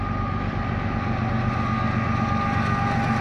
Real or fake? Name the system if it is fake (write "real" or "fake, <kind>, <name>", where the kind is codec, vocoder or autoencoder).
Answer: real